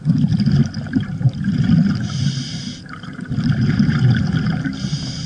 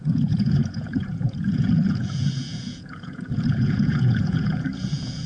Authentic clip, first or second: first